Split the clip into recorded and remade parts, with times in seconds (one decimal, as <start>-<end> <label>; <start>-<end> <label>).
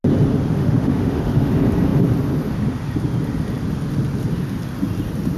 0.0-0.6 recorded; 0.6-1.5 remade; 1.5-5.4 recorded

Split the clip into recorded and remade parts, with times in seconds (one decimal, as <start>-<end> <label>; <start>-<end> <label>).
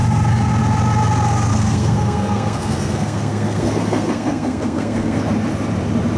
0.0-1.5 recorded; 1.5-5.2 remade; 5.2-6.2 recorded